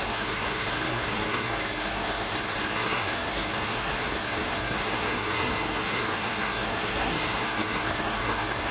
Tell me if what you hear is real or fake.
fake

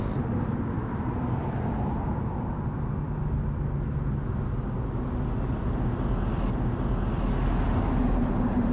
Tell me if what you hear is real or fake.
real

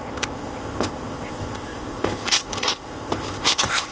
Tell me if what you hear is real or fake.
fake